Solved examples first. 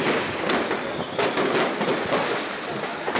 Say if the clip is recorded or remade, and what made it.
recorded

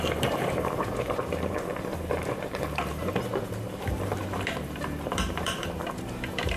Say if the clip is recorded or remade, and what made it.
remade, vocoder, BigVGAN v2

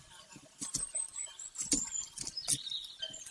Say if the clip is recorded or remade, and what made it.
recorded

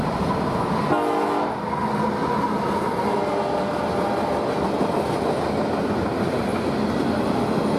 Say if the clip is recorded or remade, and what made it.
recorded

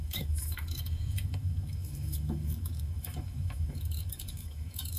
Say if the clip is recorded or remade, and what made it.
remade, autoencoder, DAC-VAE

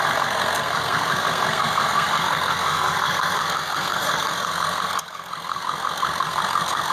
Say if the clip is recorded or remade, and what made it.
remade, codec, SNAC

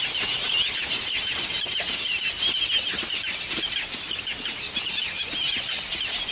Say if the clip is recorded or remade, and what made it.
recorded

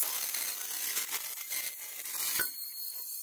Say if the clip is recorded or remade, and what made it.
recorded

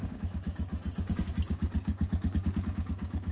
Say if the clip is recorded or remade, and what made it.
remade, codec, DAC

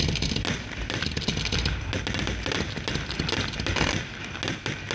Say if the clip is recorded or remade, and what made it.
recorded